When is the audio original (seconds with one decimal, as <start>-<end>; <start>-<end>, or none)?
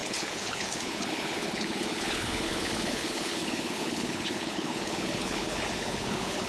none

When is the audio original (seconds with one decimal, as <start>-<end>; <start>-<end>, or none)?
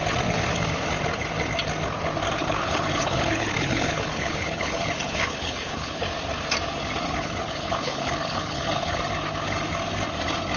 0.0-2.4; 6.0-7.1; 9.0-10.6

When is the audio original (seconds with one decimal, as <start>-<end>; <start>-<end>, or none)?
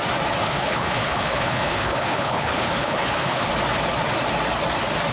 0.0-0.4; 3.5-5.1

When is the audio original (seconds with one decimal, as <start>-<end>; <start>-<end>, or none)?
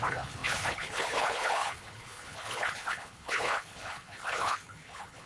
none